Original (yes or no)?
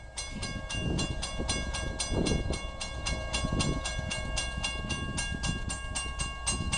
yes